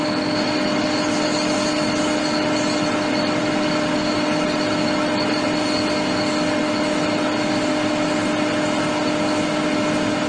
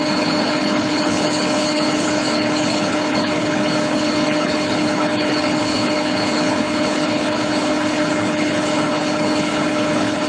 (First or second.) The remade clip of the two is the second